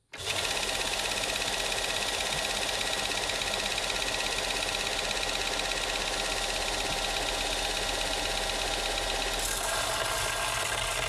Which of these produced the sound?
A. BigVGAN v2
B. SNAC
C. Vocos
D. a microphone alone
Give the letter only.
D